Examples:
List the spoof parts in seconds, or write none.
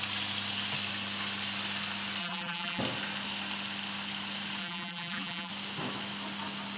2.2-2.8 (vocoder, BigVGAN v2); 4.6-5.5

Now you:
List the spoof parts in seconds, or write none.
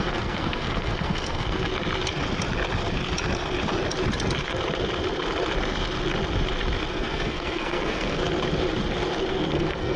0.0-1.7 (codec, SNAC); 6.9-8.2; 9.3-10.0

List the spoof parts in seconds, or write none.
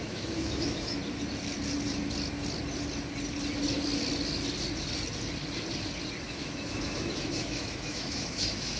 0.0-1.0 (autoencoder, DAC-VAE); 6.2-8.8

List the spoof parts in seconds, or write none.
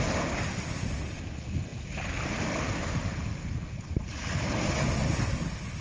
1.7-2.3 (vocoder, BigVGAN v2)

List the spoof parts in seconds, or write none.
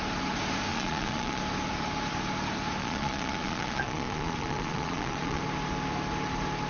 0.7-1.4 (vocoder, Vocos); 2.8-5.4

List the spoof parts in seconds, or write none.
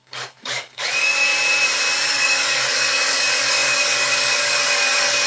0.0-1.3 (codec, DAC); 2.1-5.3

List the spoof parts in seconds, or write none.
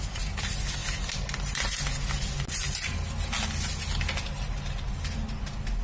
none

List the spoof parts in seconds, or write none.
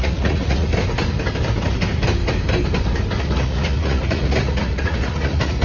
0.0-0.7 (vocoder, Vocos); 3.2-5.6